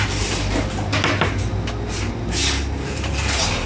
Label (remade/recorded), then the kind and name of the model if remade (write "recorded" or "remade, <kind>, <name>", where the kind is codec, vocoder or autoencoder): recorded